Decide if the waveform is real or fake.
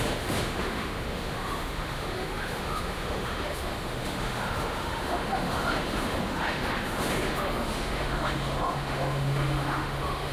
fake